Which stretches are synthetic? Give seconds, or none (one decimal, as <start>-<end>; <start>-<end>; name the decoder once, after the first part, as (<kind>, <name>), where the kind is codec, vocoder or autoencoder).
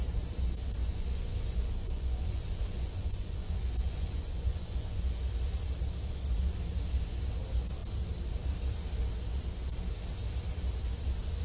0.8-5.0 (vocoder, Vocos)